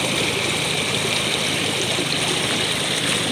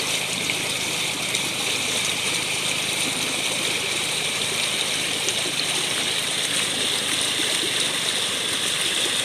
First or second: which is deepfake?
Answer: second